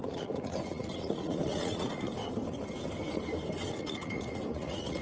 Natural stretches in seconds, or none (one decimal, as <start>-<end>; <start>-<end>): 2.2-3.7